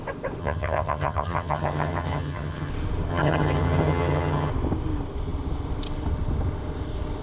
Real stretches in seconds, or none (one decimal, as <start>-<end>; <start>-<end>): 0.0-0.4; 2.7-3.1; 4.5-7.2